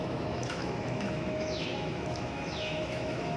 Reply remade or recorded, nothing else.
remade